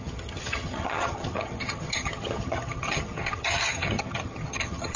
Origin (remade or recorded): remade